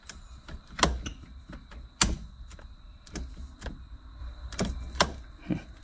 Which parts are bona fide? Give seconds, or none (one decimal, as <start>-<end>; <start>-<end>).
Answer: 0.0-4.2; 5.0-5.8